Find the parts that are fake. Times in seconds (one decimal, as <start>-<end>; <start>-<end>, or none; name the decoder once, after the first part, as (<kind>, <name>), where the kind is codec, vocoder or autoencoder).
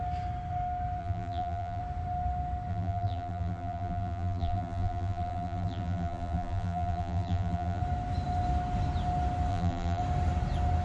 1.0-1.8 (vocoder, BigVGAN v2); 2.7-7.8; 9.5-10.0